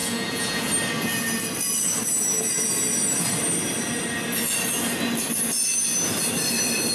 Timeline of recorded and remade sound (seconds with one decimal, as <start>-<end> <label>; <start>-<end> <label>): 0.0-0.7 remade; 0.7-6.9 recorded